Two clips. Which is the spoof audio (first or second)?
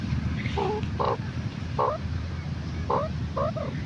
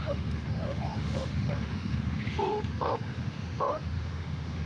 second